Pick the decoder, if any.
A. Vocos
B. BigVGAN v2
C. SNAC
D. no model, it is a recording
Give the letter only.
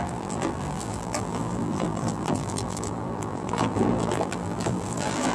B